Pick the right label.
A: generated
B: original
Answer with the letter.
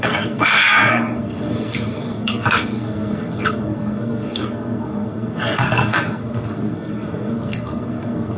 A